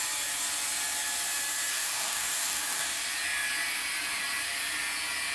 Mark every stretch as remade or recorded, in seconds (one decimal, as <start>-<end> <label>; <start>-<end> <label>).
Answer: 0.0-1.7 recorded; 1.7-3.0 remade; 3.0-5.3 recorded